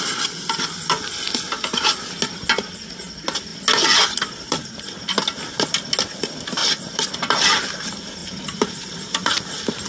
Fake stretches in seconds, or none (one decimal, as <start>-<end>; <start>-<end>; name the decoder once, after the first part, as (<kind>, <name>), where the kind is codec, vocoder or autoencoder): 6.6-7.1 (vocoder, BigVGAN v2); 8.2-9.3

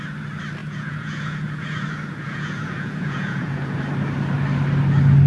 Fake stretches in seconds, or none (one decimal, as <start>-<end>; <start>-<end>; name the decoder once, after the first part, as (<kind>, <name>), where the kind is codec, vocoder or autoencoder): 0.6-3.8 (vocoder, Vocos)

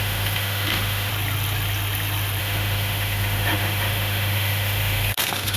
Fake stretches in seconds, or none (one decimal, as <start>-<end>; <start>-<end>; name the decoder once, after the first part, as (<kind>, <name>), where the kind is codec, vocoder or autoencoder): 0.0-1.1 (autoencoder, DAC-VAE); 2.4-5.6